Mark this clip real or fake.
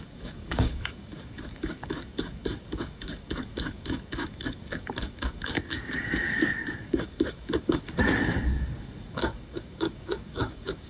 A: fake